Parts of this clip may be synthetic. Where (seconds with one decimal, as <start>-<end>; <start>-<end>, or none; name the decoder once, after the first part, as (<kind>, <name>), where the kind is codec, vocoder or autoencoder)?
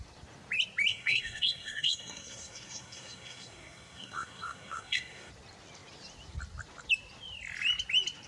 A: 0.9-5.3 (codec, SNAC)